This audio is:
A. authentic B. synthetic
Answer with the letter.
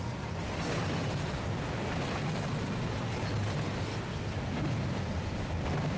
A